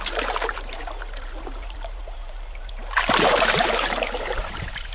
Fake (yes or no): yes